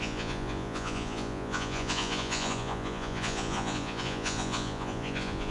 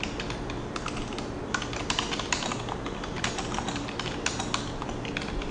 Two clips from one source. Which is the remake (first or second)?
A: first